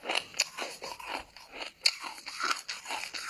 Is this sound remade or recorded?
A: recorded